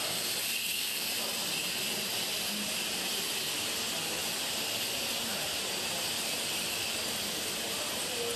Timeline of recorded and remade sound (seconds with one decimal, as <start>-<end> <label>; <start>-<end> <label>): 0.0-0.6 recorded; 0.6-1.1 remade; 1.1-8.4 recorded